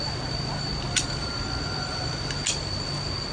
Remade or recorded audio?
recorded